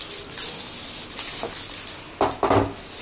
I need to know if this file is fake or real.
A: real